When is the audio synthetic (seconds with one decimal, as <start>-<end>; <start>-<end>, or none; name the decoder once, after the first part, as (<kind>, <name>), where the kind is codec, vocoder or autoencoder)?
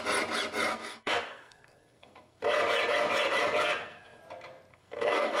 0.7-2.4 (codec, SNAC); 3.6-4.2; 4.7-5.4